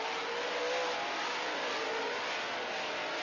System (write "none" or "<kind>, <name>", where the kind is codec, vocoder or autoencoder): none